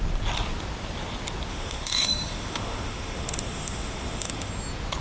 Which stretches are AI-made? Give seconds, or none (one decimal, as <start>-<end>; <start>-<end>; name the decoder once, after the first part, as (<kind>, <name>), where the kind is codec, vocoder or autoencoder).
1.5-4.5 (autoencoder, DAC-VAE)